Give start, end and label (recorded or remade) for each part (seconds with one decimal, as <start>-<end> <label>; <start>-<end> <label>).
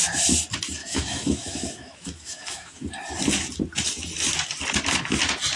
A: 0.0-0.8 recorded; 0.8-2.9 remade; 2.9-5.6 recorded